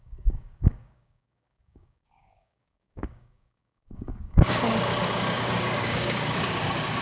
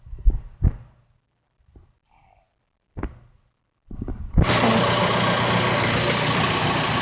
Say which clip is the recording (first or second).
second